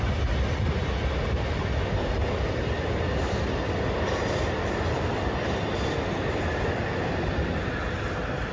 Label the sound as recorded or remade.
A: recorded